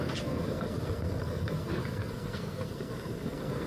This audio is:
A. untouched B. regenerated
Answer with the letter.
B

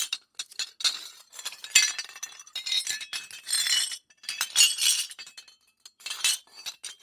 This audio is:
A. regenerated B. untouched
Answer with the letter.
B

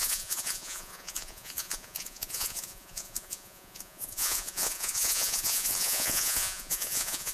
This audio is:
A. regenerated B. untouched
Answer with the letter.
A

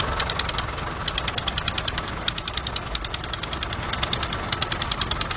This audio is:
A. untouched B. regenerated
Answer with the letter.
A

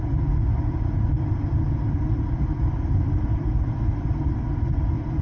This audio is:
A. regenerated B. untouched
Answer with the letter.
B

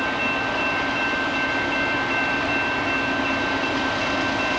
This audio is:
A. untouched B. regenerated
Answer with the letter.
A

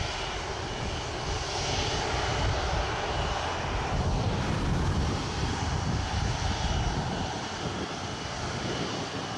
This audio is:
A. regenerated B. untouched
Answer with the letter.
A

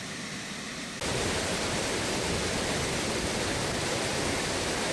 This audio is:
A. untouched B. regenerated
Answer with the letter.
A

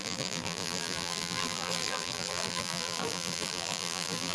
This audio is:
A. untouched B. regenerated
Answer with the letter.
B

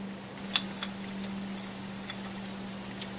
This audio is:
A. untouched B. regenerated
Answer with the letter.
A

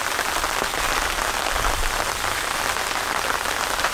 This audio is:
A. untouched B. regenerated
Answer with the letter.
B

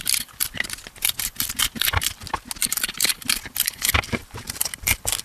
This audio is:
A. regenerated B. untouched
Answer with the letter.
B